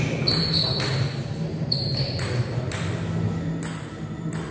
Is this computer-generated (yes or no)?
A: no